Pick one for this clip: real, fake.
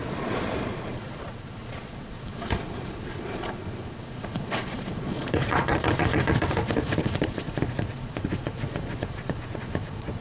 fake